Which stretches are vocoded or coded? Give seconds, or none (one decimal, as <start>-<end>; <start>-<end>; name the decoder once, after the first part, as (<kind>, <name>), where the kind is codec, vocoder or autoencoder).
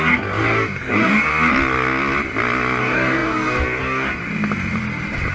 0.0-1.3 (codec, DAC); 2.8-4.2